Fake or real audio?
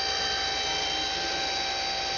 real